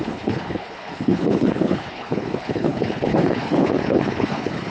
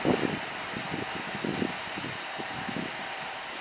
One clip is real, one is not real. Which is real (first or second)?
second